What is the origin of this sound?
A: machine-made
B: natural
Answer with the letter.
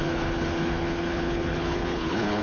A